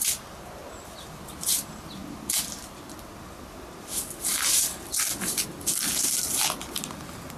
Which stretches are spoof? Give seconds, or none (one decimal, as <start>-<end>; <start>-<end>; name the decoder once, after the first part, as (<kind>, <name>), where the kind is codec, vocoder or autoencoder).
none